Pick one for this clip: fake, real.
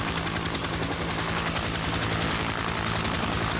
real